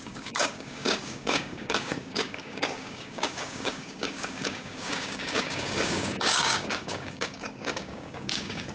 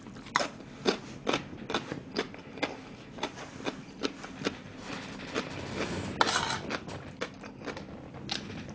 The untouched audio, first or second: second